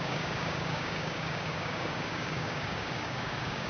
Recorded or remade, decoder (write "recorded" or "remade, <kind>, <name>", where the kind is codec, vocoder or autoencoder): remade, codec, DAC